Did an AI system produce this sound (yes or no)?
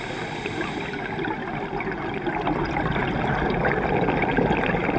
no